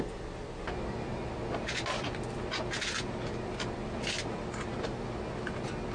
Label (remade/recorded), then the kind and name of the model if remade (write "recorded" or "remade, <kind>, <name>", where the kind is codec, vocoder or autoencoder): recorded